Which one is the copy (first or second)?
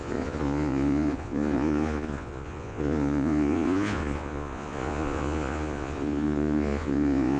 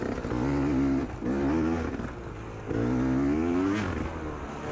first